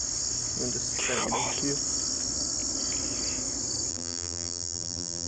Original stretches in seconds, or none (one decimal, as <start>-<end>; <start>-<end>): 0.0-3.9